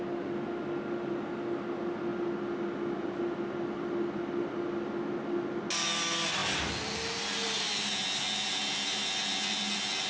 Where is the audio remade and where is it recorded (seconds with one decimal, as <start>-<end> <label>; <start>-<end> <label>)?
0.0-10.1 recorded

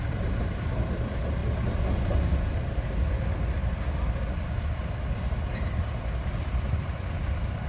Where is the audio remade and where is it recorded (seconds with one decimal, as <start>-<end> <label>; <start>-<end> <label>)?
0.0-1.4 remade; 1.4-2.7 recorded; 2.7-3.6 remade; 3.6-6.2 recorded; 6.2-7.7 remade

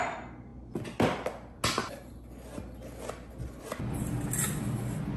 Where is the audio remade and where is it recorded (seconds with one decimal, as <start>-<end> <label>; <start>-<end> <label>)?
0.0-5.2 recorded

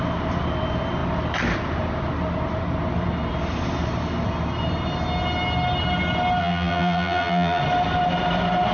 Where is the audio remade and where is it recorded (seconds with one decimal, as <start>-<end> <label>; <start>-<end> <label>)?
0.0-6.4 recorded; 6.4-7.6 remade; 7.6-8.7 recorded

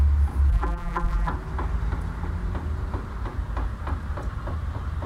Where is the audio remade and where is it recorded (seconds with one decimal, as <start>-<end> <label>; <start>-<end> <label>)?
0.0-0.5 recorded; 0.5-1.3 remade; 1.3-5.1 recorded

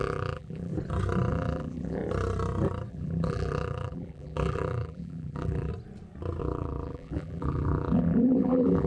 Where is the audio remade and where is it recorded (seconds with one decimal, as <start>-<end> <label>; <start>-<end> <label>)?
0.0-0.7 remade; 0.7-1.3 recorded; 1.3-2.0 remade; 2.0-2.9 recorded; 2.9-5.7 remade; 5.7-6.4 recorded; 6.4-8.9 remade

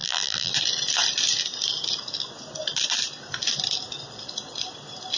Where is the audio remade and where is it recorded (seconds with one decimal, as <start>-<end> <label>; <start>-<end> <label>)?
0.0-0.5 remade; 0.5-5.2 recorded